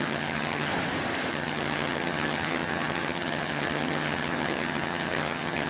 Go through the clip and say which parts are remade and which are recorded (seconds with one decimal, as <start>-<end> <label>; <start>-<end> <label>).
0.0-0.7 remade; 0.7-1.3 recorded; 1.3-5.7 remade